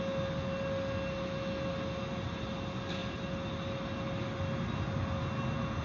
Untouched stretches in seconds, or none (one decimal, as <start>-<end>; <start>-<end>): 0.0-5.8